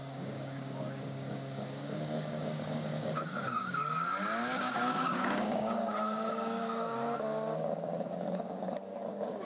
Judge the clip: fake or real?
fake